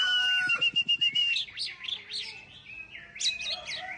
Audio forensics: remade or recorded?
recorded